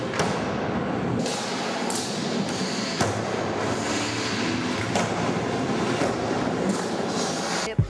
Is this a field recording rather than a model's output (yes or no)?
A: yes